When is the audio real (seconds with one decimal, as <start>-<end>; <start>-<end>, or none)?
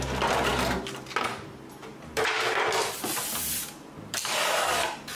0.0-1.8